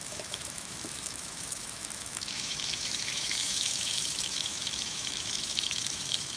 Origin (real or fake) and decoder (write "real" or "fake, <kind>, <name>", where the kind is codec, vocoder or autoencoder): fake, autoencoder, DAC-VAE